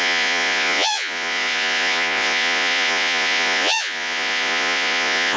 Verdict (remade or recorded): remade